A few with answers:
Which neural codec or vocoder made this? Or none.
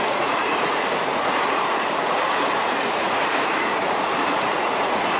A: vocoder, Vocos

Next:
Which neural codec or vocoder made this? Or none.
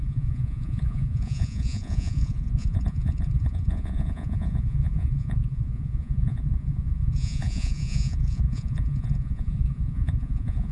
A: vocoder, Vocos